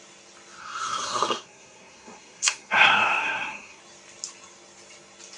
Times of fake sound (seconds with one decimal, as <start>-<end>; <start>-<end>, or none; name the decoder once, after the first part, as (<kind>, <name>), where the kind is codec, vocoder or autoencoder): 0.6-3.8 (codec, SNAC)